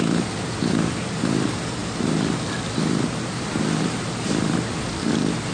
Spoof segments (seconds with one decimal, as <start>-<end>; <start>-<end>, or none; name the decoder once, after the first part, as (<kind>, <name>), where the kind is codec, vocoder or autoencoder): 1.8-5.1 (vocoder, BigVGAN v2)